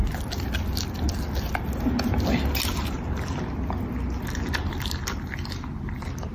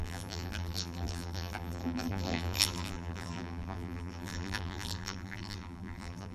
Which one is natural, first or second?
first